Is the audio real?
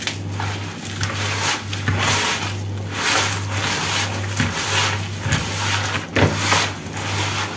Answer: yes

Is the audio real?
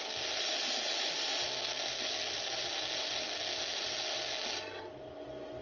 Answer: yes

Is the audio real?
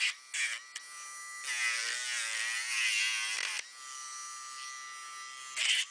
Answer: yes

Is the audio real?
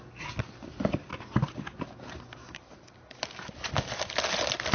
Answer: yes